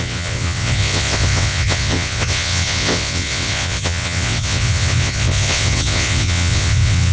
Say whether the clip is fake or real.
fake